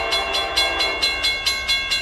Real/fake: real